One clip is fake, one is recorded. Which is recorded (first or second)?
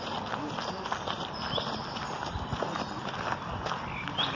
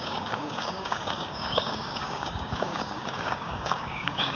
first